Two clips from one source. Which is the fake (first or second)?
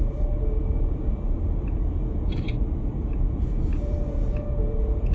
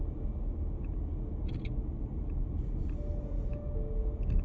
first